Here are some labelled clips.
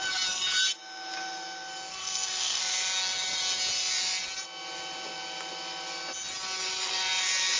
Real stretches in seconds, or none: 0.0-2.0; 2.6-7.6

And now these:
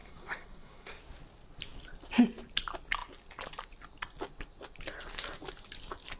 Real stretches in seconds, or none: 1.0-6.2

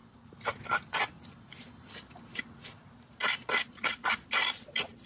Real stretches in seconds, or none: 0.0-5.1

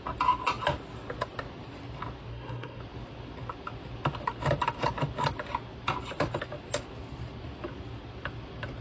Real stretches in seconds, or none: 0.0-2.3; 2.8-8.8

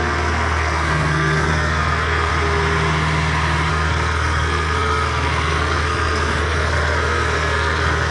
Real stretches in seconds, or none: 2.3-3.7

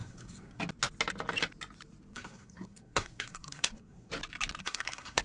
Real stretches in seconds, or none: 0.6-2.1; 4.1-4.6